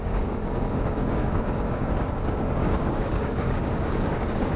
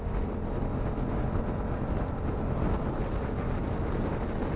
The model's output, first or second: first